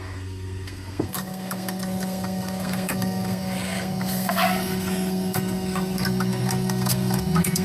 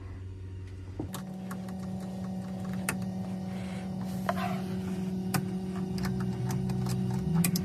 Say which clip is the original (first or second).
second